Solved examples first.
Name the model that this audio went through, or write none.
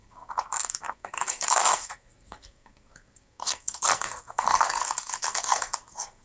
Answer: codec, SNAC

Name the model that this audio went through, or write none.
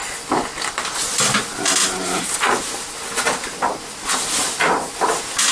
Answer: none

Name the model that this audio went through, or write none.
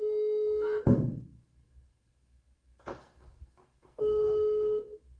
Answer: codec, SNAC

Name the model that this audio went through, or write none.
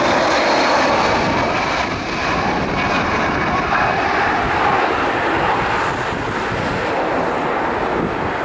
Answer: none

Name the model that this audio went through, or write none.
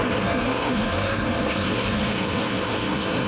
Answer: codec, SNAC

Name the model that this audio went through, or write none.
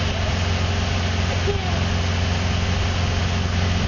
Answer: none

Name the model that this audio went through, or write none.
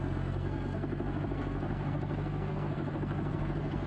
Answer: codec, SNAC